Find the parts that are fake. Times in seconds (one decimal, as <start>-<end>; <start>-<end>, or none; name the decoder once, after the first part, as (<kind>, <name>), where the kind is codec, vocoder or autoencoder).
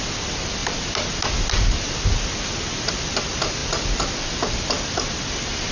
none